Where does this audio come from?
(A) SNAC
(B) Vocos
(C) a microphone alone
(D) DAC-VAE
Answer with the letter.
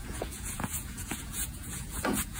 B